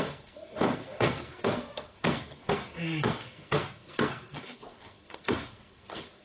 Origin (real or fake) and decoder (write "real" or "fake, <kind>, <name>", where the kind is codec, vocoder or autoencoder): fake, codec, SNAC